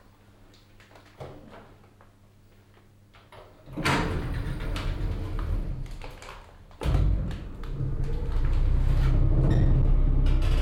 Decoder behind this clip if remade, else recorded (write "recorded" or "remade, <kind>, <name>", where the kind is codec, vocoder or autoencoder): recorded